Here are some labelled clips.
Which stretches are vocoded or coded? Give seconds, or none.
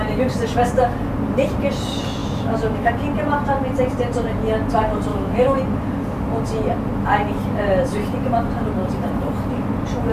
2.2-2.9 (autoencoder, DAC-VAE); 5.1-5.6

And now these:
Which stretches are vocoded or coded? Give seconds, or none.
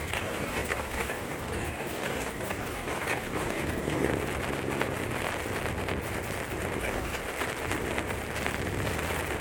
0.0-4.1 (codec, DAC); 6.8-7.2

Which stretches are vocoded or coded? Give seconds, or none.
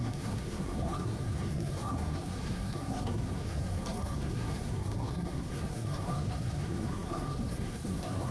0.0-8.3 (codec, SNAC)